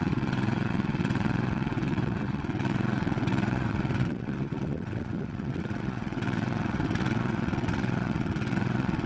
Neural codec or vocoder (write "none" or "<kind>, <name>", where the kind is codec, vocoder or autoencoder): vocoder, WaveNeXt